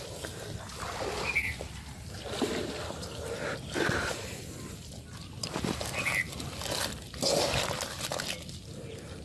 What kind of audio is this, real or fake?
real